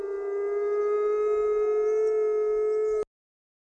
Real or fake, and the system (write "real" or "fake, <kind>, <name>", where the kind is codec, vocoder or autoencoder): real